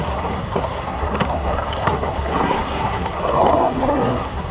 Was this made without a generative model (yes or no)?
no